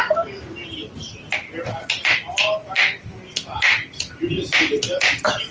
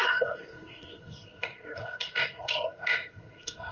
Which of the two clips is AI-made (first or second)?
second